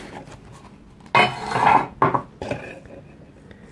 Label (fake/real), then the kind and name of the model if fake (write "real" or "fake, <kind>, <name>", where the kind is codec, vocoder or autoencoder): real